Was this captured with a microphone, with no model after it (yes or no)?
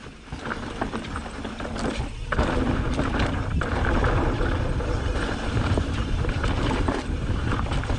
yes